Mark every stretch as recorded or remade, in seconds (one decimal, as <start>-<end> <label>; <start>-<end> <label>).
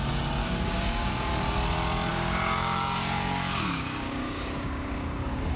0.0-0.4 recorded; 0.4-1.3 remade; 1.3-2.1 recorded; 2.1-5.6 remade